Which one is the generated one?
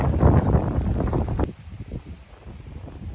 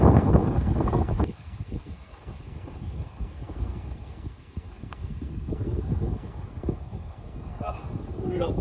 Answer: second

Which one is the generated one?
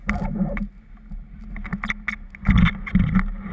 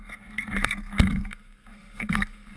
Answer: second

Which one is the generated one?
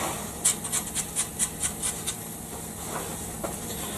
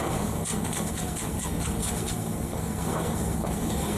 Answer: second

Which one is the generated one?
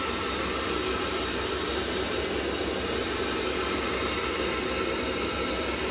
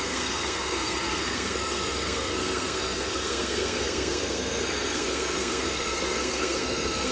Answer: second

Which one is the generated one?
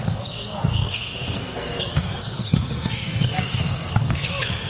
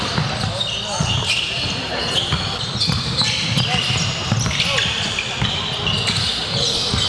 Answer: first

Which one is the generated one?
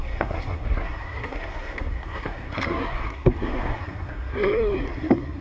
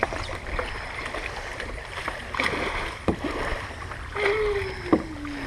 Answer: first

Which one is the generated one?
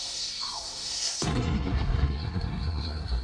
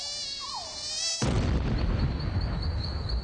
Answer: first